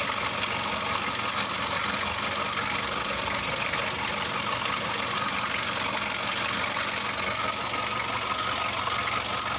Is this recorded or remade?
recorded